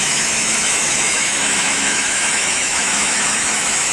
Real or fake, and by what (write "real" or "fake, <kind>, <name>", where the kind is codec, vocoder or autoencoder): fake, autoencoder, DAC-VAE